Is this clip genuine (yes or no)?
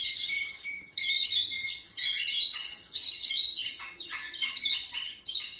no